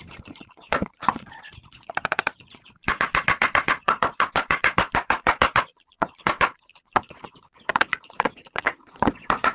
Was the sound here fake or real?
fake